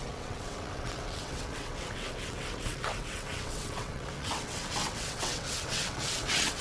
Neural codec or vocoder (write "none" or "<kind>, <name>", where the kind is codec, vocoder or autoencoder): vocoder, WaveNeXt